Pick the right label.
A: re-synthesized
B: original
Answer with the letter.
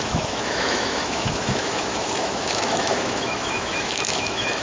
A